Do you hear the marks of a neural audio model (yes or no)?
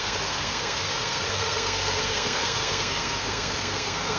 yes